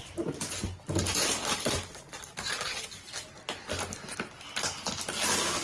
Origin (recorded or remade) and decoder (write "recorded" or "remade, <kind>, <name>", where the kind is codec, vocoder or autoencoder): recorded